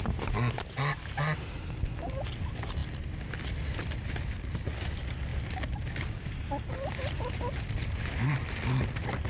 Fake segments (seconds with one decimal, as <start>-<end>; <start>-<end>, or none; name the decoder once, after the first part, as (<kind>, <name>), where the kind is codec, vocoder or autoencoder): none